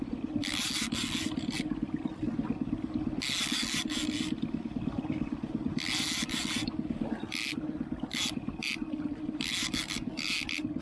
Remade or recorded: recorded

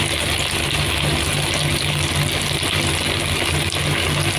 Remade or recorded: recorded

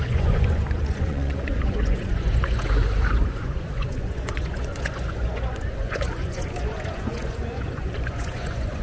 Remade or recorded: remade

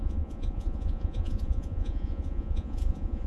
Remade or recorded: remade